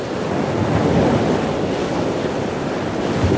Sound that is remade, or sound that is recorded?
recorded